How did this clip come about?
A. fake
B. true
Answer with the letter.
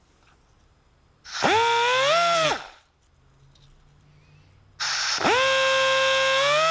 B